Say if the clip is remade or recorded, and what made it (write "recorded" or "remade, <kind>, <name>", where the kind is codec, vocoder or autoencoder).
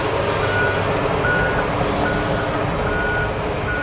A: recorded